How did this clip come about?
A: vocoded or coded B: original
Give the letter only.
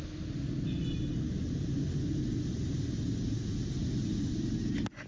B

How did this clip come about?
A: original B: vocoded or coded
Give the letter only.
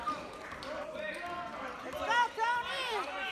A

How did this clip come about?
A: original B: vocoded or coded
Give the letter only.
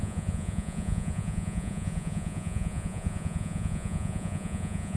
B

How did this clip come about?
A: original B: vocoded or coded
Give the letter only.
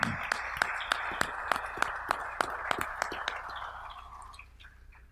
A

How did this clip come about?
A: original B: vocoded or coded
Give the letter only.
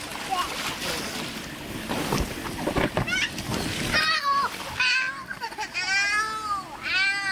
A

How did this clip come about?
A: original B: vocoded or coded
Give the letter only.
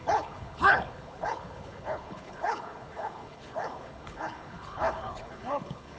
B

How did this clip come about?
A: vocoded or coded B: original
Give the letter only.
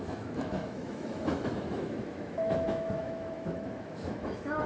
A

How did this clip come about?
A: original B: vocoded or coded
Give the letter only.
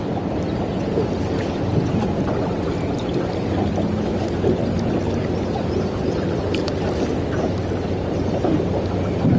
A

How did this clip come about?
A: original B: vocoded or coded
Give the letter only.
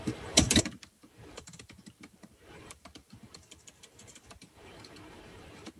B